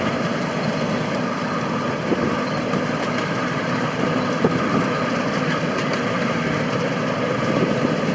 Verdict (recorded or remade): recorded